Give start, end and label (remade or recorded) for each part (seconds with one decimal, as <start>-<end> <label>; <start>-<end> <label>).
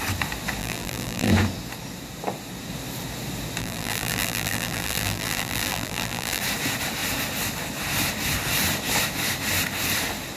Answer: 0.0-0.6 recorded; 0.6-1.3 remade; 1.3-3.6 recorded; 3.6-6.4 remade; 6.4-10.4 recorded